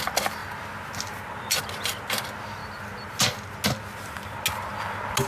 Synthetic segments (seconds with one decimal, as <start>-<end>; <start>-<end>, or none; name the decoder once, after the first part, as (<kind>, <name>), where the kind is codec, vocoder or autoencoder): none